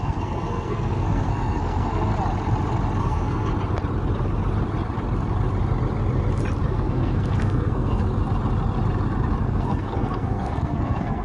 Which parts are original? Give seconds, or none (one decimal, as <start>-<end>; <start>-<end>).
2.1-3.0; 3.5-6.7; 8.0-9.4